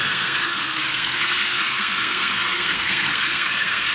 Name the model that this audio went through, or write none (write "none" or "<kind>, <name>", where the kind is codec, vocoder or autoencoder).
codec, SNAC